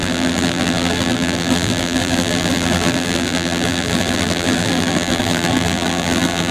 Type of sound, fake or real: fake